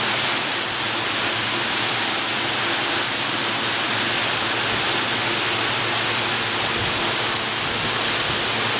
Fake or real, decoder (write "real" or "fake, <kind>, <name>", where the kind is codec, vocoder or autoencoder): real